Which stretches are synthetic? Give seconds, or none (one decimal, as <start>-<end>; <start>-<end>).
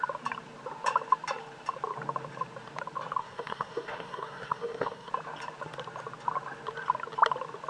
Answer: 3.2-5.1